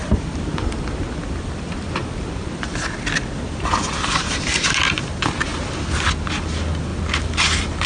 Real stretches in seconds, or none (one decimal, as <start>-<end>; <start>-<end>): 0.7-2.0; 4.7-5.5; 6.1-7.9